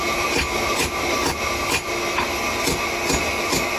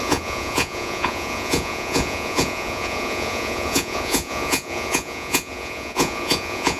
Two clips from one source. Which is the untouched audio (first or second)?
first